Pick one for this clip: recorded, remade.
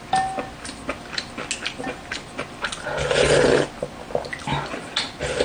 recorded